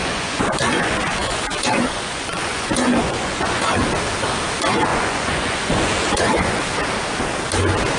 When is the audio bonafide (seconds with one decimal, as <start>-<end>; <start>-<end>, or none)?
3.6-4.9; 6.6-8.0